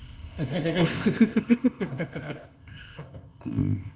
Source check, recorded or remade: remade